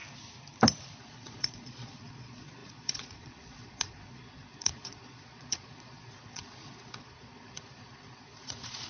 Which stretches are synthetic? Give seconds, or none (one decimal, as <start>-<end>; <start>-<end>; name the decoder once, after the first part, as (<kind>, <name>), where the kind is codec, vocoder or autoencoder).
1.0-8.9 (vocoder, Vocos)